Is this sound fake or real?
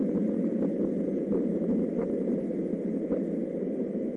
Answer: real